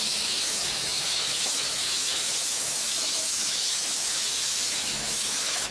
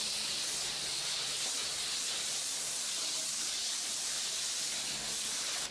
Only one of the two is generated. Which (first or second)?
first